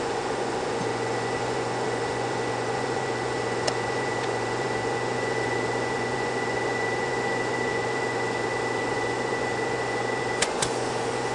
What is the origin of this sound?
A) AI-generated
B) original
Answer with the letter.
A